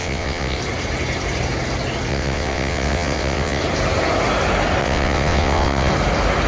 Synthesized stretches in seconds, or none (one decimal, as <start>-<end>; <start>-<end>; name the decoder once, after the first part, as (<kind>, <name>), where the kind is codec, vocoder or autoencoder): 0.0-0.6 (vocoder, WaveNeXt); 2.1-3.6; 4.8-5.9